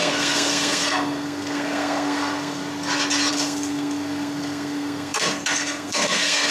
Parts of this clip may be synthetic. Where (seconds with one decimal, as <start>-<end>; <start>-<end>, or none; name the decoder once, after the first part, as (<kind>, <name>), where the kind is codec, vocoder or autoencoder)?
0.0-2.6 (codec, SNAC); 3.3-6.5